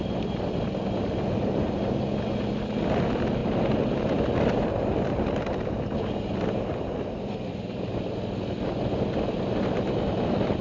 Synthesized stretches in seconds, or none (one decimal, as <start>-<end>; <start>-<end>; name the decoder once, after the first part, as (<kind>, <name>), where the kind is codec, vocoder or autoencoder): none